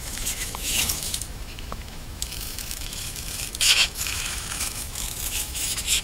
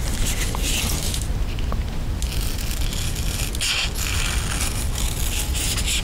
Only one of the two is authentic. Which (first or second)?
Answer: second